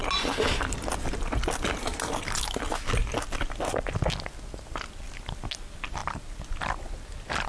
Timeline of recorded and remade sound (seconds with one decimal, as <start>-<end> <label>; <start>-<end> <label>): 0.0-7.5 recorded